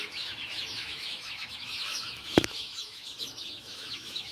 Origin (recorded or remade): remade